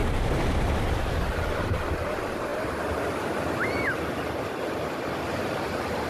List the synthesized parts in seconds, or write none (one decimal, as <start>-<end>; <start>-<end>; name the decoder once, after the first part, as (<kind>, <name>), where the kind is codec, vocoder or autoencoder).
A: none